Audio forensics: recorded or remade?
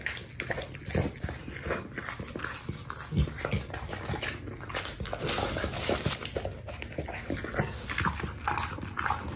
recorded